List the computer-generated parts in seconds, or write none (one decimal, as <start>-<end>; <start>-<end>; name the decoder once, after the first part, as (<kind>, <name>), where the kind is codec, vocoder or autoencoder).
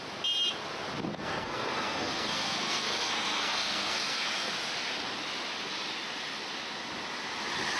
1.1-4.5 (codec, SNAC)